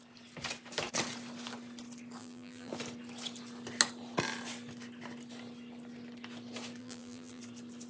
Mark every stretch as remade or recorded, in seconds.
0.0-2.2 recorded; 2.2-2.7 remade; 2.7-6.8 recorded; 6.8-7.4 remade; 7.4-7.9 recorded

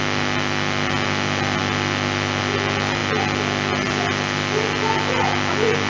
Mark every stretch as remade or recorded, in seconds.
0.0-5.9 recorded

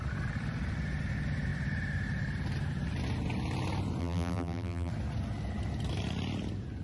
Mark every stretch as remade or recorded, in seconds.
0.0-4.0 recorded; 4.0-4.9 remade; 4.9-6.8 recorded